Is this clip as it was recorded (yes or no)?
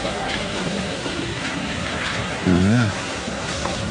no